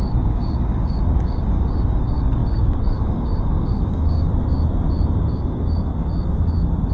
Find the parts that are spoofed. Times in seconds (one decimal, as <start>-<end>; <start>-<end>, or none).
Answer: 0.0-4.3; 5.3-5.9